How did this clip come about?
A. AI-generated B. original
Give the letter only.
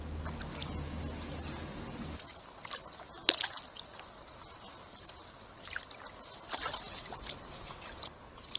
B